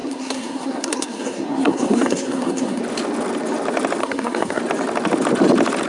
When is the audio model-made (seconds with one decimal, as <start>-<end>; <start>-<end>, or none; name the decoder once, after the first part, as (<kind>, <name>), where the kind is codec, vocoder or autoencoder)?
0.0-2.8 (codec, SNAC); 4.0-4.6